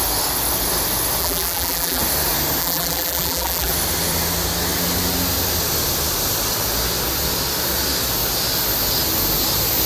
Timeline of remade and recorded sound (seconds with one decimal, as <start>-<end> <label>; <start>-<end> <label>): 0.0-1.2 recorded; 1.2-2.0 remade; 2.0-2.6 recorded; 2.6-3.7 remade; 3.7-9.9 recorded